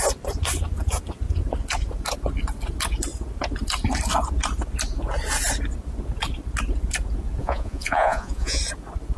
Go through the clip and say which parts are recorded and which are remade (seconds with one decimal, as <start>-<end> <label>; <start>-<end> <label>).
0.0-7.4 recorded; 7.4-8.6 remade; 8.6-9.2 recorded